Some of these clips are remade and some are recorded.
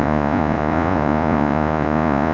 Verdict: remade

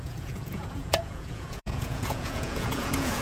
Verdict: remade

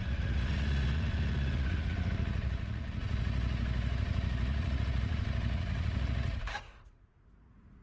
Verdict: remade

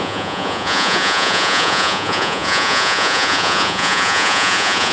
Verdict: remade